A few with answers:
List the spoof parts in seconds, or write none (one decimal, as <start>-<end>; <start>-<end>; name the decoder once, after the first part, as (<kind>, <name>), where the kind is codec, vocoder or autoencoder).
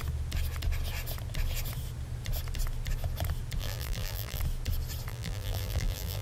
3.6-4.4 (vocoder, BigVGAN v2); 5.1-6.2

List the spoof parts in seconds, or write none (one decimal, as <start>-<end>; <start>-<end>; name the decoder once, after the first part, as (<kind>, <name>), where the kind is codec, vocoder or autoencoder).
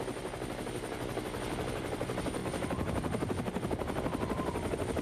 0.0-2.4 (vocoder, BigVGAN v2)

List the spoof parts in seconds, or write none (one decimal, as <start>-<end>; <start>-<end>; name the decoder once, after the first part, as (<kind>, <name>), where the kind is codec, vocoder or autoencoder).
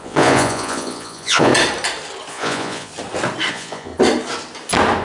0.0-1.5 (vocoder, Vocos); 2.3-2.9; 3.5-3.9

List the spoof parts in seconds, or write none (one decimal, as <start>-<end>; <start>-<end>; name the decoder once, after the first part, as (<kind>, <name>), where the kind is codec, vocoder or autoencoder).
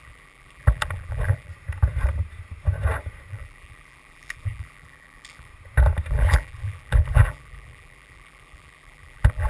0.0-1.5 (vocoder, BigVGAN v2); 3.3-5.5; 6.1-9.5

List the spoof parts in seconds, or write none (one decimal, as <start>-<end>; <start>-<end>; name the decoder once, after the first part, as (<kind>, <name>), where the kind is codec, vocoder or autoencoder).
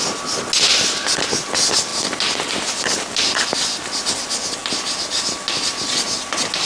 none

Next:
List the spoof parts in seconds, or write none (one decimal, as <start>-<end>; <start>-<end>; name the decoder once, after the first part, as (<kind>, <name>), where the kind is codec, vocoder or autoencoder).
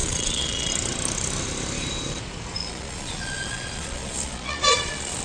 0.0-0.7 (vocoder, Vocos); 2.6-5.2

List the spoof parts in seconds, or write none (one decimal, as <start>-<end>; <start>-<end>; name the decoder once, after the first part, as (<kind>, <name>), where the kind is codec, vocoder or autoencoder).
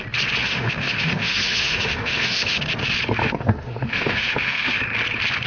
0.4-2.6 (autoencoder, DAC-VAE); 3.2-4.8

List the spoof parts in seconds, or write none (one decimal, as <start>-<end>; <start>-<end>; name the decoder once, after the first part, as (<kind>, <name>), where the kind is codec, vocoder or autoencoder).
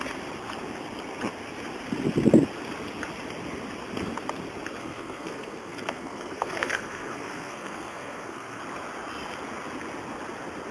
4.8-8.6 (codec, SNAC)